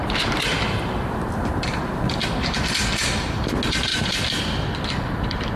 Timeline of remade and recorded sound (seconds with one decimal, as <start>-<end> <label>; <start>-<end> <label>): 0.0-2.3 remade; 2.3-3.9 recorded; 3.9-5.6 remade

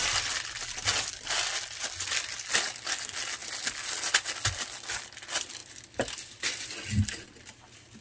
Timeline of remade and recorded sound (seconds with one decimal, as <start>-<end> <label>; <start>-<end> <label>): 0.0-8.0 recorded

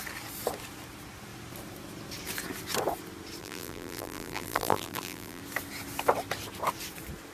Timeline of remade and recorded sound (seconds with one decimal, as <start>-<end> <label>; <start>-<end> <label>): 0.0-3.4 recorded; 3.4-5.4 remade; 5.4-7.3 recorded

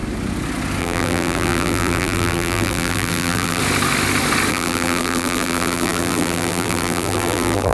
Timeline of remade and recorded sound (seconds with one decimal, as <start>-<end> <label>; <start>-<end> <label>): 0.0-0.8 recorded; 0.8-3.6 remade; 3.6-4.5 recorded; 4.5-7.7 remade

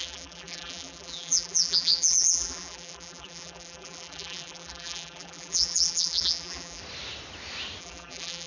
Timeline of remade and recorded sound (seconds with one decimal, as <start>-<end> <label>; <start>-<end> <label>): 0.0-6.8 remade; 6.8-7.8 recorded; 7.8-8.5 remade

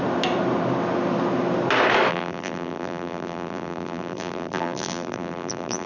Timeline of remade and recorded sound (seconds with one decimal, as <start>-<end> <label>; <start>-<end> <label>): 0.0-2.1 recorded; 2.1-5.9 remade

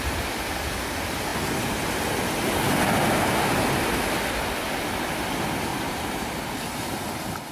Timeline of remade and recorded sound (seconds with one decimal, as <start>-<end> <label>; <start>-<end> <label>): 0.0-5.7 recorded; 5.7-6.3 remade; 6.3-7.5 recorded